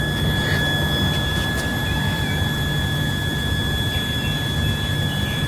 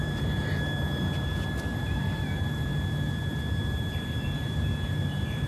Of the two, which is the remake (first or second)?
second